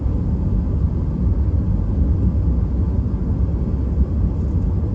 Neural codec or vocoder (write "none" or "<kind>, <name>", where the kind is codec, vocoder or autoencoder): none